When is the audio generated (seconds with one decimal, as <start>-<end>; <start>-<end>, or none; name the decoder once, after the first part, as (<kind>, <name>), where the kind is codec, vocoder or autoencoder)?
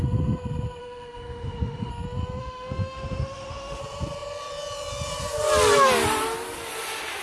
0.8-1.9 (autoencoder, DAC-VAE); 2.4-3.8